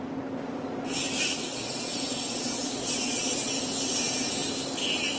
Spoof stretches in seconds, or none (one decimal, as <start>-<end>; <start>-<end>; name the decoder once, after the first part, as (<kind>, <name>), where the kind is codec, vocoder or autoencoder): 1.4-3.5 (vocoder, Vocos)